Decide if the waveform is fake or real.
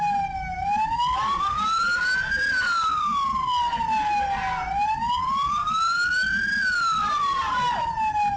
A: real